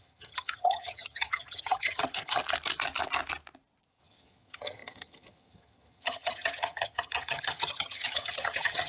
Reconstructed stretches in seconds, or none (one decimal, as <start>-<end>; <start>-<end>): 0.0-2.4; 3.9-8.9